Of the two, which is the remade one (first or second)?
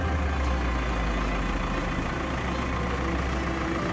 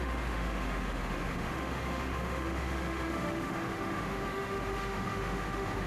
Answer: second